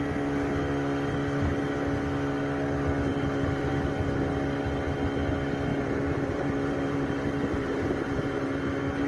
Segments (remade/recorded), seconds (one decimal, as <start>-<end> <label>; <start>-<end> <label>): 0.0-3.1 recorded; 3.1-3.7 remade; 3.7-5.7 recorded; 5.7-8.6 remade; 8.6-9.1 recorded